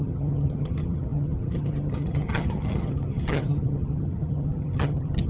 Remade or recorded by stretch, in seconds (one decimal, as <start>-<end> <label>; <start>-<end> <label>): 0.0-5.3 remade